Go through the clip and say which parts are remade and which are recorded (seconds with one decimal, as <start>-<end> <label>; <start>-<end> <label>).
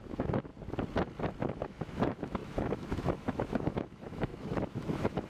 0.0-0.5 remade; 0.5-1.5 recorded; 1.5-5.3 remade